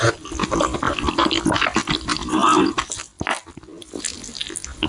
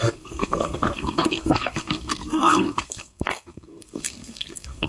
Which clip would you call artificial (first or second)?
second